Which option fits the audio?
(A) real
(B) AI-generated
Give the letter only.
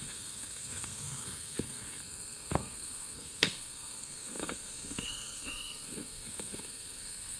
B